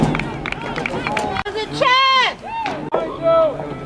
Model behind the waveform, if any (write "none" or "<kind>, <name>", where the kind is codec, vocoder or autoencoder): none